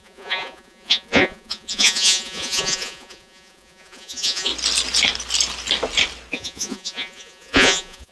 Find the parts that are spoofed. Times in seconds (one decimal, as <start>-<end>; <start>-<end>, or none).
0.0-4.5; 6.3-8.1